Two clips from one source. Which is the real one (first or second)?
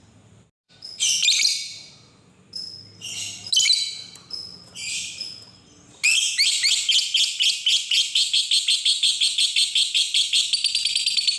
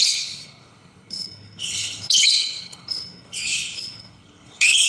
first